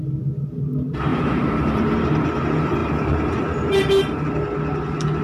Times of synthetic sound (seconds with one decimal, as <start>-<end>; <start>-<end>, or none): 1.1-1.9; 2.8-4.2